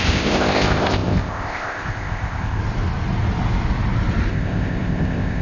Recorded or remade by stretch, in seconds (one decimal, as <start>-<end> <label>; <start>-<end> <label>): 0.0-2.6 remade; 2.6-4.3 recorded; 4.3-5.4 remade